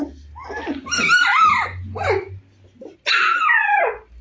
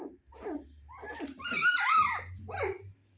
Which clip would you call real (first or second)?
first